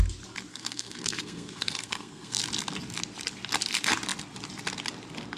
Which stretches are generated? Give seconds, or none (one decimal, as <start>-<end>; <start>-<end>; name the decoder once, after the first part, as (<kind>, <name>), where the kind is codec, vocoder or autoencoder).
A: 0.5-2.4 (codec, SNAC)